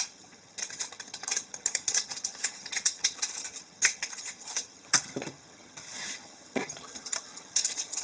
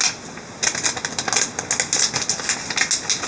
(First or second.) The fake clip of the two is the first